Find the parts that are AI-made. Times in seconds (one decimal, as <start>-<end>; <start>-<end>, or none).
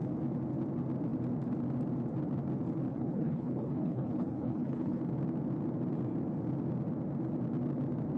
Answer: 2.9-5.0